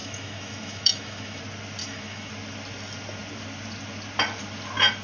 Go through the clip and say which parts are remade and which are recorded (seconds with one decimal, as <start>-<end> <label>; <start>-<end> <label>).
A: 0.0-1.4 remade; 1.4-1.8 recorded; 1.8-2.3 remade; 2.3-5.0 recorded